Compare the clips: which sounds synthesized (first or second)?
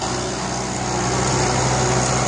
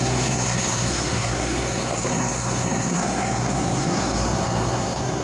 second